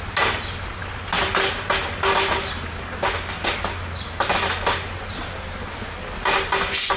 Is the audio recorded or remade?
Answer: recorded